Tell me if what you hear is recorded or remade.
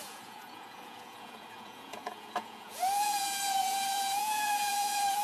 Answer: remade